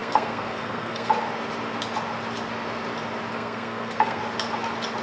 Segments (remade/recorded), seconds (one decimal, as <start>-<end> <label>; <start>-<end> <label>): 0.0-1.1 remade; 1.1-3.3 recorded; 3.3-4.2 remade; 4.2-5.0 recorded